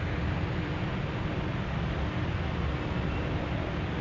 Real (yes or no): yes